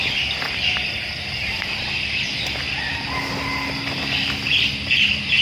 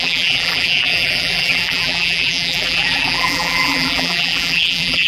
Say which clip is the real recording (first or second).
first